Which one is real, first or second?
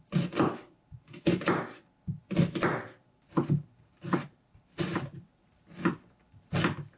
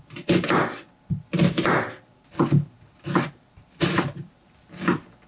second